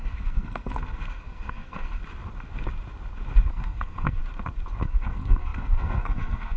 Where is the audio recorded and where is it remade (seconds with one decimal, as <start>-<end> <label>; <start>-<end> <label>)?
0.0-2.0 remade; 2.0-3.5 recorded; 3.5-4.2 remade; 4.2-4.8 recorded; 4.8-6.6 remade